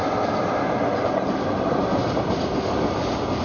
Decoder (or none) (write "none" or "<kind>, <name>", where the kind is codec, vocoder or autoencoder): none